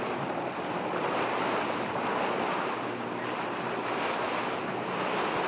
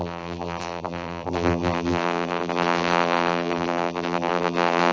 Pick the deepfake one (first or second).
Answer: second